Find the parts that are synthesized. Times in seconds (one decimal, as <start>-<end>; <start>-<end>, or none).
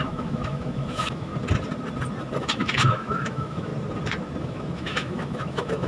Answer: 0.0-1.3; 2.4-3.7; 4.4-5.9